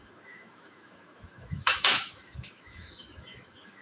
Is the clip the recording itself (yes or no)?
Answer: no